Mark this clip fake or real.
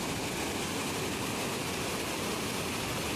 real